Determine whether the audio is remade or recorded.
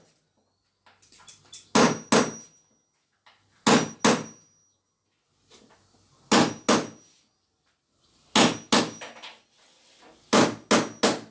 recorded